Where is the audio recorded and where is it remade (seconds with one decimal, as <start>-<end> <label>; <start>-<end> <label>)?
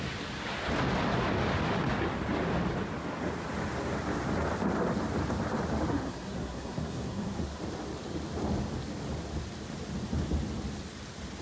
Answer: 0.0-5.9 recorded; 5.9-7.6 remade; 7.6-11.4 recorded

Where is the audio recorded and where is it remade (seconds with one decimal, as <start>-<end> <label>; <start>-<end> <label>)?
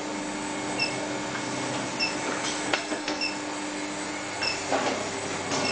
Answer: 0.0-2.7 recorded; 2.7-3.2 remade; 3.2-5.7 recorded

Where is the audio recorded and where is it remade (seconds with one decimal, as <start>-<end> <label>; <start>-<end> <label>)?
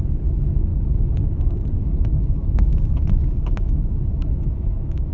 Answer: 0.0-0.7 recorded; 0.7-1.2 remade; 1.2-1.8 recorded; 1.8-5.1 remade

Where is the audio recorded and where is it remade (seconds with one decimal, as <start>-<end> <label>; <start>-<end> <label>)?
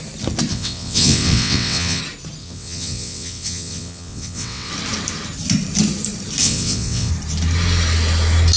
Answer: 0.0-0.5 recorded; 0.5-2.0 remade; 2.0-2.4 recorded; 2.4-4.7 remade; 4.7-6.4 recorded; 6.4-7.1 remade; 7.1-8.6 recorded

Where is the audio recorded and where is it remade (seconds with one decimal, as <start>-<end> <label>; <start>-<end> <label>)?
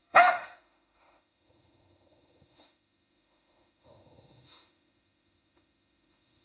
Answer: 0.0-6.4 remade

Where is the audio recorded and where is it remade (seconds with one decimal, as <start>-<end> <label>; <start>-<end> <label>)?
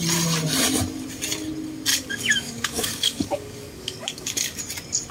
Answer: 0.0-1.9 recorded; 1.9-4.6 remade; 4.6-5.1 recorded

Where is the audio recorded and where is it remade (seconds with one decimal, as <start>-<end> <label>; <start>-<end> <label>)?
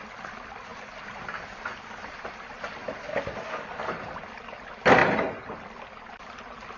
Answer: 0.0-5.0 recorded; 5.0-6.1 remade; 6.1-6.8 recorded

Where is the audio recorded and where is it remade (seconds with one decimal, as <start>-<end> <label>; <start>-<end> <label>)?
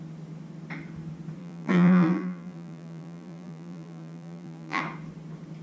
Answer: 0.0-1.4 recorded; 1.4-4.8 remade; 4.8-5.6 recorded